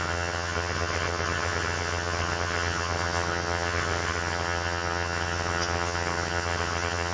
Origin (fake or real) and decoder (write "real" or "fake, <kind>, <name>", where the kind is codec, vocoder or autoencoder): fake, vocoder, HiFi-GAN